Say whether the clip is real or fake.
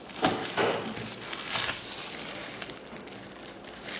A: real